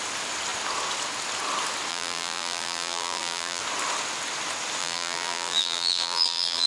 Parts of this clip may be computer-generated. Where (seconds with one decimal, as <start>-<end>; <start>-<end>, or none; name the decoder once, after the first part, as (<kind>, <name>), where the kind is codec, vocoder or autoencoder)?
1.9-3.6 (vocoder, BigVGAN v2); 4.8-6.7